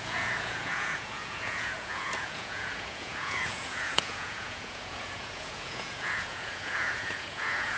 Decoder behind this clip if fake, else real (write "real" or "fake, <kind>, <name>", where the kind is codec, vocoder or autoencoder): fake, vocoder, Vocos